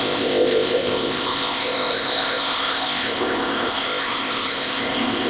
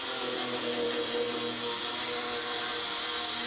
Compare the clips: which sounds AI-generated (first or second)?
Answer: first